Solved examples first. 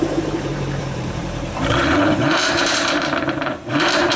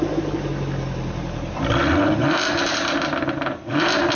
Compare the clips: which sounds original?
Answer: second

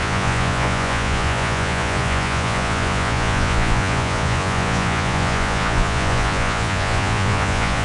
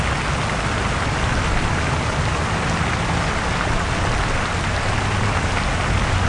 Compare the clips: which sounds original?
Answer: second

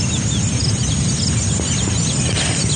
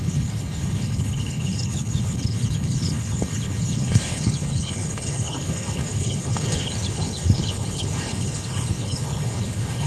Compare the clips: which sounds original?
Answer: first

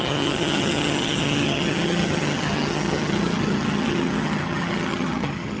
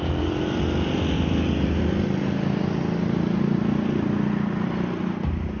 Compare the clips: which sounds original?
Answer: second